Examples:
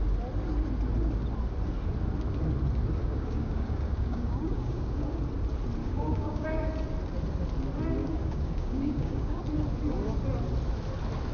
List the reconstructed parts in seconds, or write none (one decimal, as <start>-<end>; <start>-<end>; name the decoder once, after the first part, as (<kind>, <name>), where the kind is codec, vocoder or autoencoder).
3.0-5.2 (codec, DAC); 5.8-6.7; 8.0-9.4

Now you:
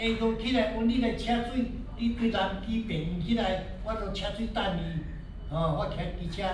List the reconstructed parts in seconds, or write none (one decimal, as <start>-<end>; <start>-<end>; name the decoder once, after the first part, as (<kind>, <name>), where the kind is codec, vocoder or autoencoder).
none

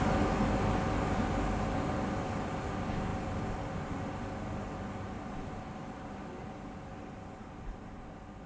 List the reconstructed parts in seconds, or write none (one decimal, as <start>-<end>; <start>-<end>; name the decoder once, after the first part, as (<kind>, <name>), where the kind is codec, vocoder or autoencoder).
none

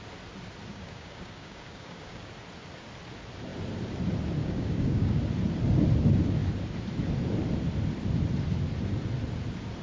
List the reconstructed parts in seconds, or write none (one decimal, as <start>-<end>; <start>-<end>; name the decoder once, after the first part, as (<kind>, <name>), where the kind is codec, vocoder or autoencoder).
0.7-2.3 (codec, DAC); 4.4-5.2